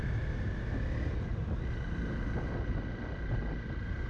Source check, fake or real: real